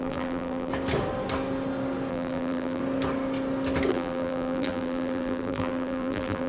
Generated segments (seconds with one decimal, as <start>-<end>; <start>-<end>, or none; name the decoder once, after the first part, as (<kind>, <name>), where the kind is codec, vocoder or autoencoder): 0.0-0.7 (vocoder, BigVGAN v2); 2.1-2.8; 3.9-6.5